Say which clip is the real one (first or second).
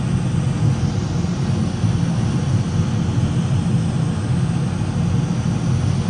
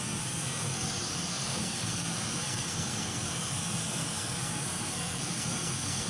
first